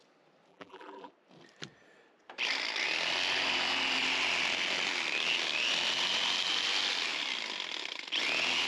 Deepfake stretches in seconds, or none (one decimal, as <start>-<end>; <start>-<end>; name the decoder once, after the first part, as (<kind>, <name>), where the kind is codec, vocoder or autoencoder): 0.5-1.1 (vocoder, BigVGAN v2)